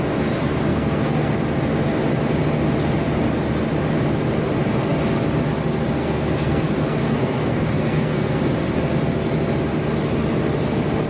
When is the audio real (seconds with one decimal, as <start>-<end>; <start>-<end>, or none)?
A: 0.0-0.7; 1.3-6.0; 8.4-11.1